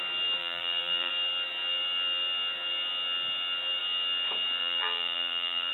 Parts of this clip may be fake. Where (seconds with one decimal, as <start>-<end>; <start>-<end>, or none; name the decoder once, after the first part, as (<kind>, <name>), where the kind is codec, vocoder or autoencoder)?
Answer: 0.4-1.1 (vocoder, BigVGAN v2); 4.6-5.7